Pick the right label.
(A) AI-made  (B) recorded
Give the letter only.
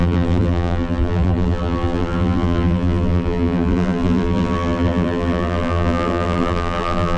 A